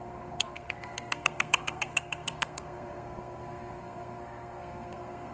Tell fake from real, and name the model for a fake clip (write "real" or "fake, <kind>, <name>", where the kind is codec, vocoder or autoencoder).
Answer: fake, codec, SNAC